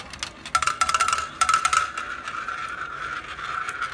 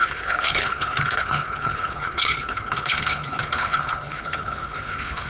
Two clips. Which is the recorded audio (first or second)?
first